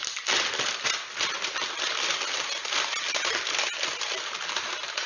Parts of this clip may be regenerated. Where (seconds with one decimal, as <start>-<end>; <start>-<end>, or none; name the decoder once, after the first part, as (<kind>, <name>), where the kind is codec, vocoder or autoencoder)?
none